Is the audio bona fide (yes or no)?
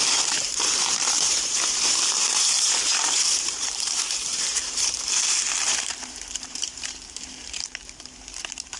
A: no